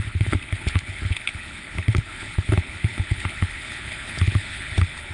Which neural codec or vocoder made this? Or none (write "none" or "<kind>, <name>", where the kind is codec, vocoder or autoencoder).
codec, HILCodec